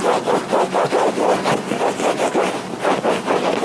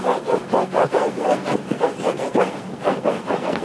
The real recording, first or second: first